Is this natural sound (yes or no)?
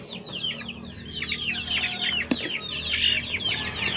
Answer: yes